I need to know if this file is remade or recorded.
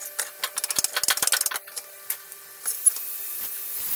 recorded